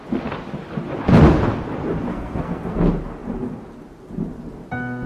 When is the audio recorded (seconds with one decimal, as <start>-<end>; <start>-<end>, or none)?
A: 0.0-2.1; 2.8-5.1